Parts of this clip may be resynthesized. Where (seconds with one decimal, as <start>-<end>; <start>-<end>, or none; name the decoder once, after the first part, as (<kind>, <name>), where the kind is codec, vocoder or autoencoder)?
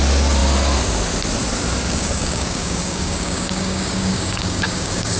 1.8-5.2 (codec, DAC)